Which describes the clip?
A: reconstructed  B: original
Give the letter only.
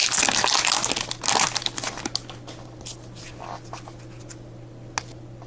B